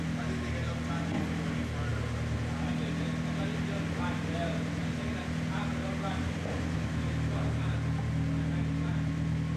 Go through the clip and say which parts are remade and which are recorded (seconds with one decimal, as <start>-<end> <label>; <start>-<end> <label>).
0.0-9.6 recorded